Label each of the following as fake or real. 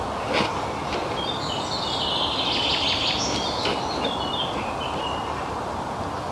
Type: real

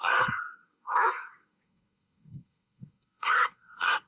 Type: fake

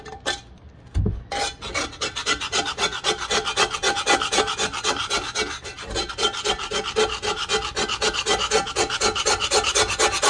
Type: real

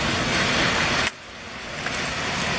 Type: real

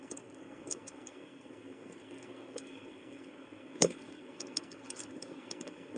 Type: fake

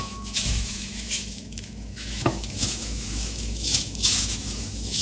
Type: fake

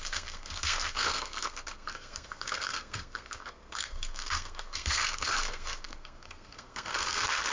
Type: fake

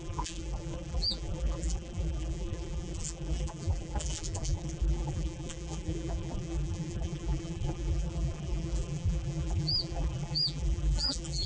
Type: fake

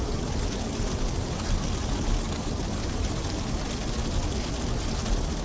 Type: fake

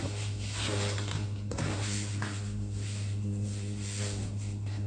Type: fake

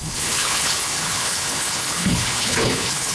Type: fake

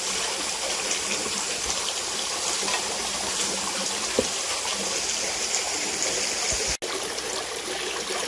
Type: real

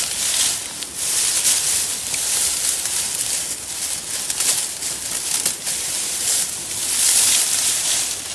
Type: real